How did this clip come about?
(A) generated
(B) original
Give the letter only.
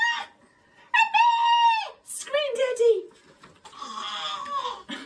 B